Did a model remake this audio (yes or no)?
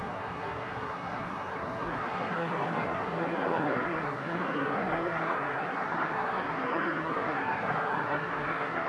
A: yes